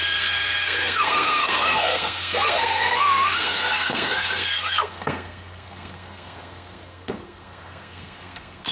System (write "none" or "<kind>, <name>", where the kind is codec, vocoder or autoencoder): codec, SNAC